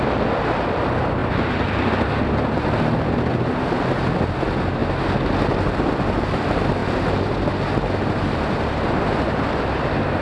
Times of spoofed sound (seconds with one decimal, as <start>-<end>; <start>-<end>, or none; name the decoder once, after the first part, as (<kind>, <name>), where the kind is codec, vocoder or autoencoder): none